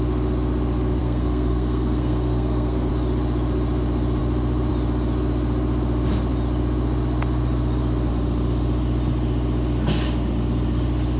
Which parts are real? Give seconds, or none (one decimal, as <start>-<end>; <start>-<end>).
0.0-1.0; 2.9-11.2